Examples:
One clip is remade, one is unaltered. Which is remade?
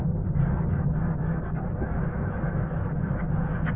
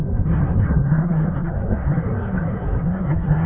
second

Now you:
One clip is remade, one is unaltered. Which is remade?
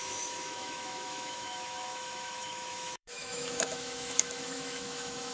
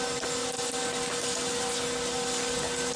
first